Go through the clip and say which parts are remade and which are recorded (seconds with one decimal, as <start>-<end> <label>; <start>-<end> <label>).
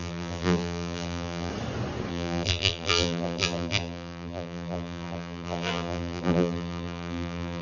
0.0-1.5 remade; 1.5-2.1 recorded; 2.1-7.6 remade